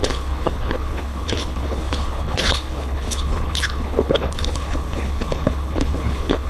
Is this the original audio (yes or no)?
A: no